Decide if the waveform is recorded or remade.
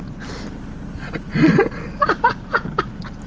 recorded